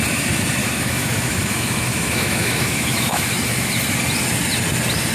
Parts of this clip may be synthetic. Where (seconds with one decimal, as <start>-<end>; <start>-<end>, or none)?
0.6-3.7